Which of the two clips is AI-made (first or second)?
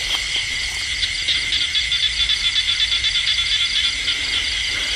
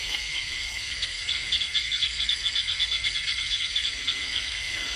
second